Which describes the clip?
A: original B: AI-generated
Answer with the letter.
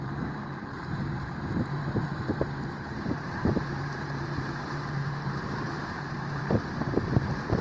B